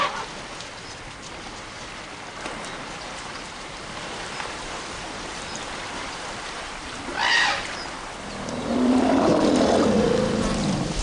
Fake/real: fake